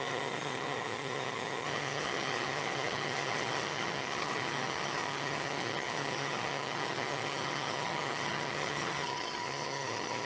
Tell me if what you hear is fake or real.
fake